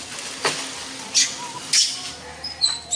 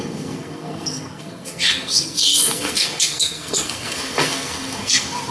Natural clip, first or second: first